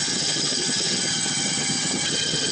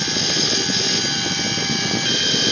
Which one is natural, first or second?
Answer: second